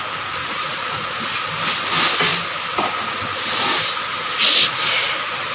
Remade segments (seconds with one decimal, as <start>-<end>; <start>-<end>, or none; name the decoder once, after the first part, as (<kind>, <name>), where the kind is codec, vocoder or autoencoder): 0.4-1.2 (vocoder, Vocos)